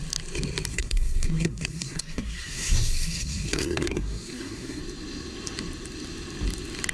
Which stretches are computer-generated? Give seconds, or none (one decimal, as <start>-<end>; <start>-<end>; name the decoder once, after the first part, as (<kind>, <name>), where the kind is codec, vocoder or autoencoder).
0.7-4.8 (codec, SNAC)